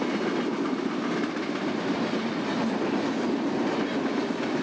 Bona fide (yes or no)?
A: yes